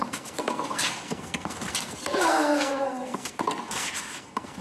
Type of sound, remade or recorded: remade